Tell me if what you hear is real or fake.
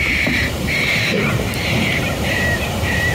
fake